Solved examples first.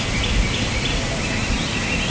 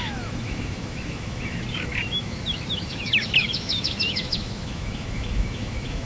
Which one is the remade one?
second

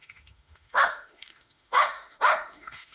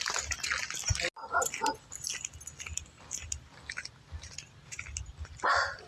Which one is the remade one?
first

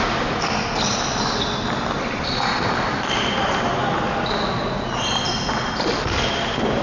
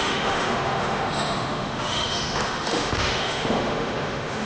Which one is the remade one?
second